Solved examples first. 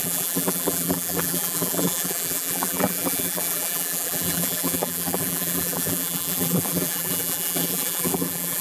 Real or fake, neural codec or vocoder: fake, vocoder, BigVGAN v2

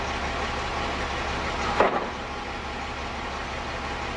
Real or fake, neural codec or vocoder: real